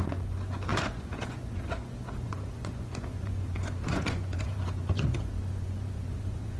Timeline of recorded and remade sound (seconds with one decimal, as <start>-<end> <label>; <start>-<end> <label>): 0.0-6.6 remade